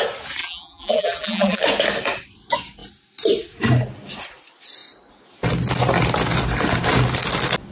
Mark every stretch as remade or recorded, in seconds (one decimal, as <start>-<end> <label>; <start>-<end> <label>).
0.0-0.4 recorded; 0.4-1.6 remade; 1.6-7.7 recorded

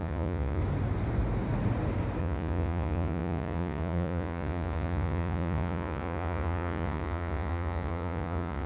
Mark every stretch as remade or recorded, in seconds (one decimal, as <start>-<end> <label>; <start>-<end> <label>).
0.0-0.6 remade; 0.6-2.2 recorded; 2.2-8.7 remade

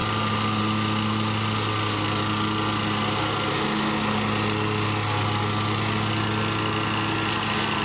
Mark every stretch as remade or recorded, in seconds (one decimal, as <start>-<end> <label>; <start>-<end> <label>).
0.0-7.8 recorded

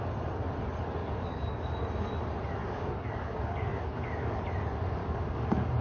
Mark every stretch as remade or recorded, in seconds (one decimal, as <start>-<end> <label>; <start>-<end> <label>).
0.0-1.0 recorded; 1.0-1.7 remade; 1.7-2.6 recorded; 2.6-4.4 remade; 4.4-5.0 recorded; 5.0-5.8 remade

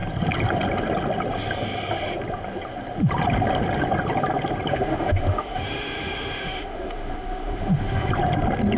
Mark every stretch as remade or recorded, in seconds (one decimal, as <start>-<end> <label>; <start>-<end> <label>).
0.0-4.7 recorded; 4.7-8.1 remade; 8.1-8.8 recorded

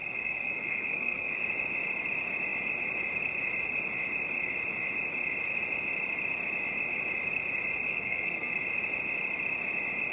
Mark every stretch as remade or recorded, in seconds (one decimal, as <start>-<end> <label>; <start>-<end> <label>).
0.0-1.4 remade; 1.4-7.9 recorded; 7.9-8.6 remade; 8.6-10.1 recorded